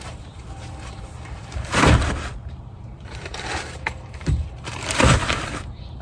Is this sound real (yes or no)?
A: no